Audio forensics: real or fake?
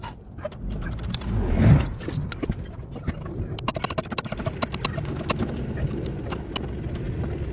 real